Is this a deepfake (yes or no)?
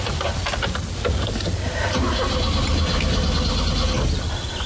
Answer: no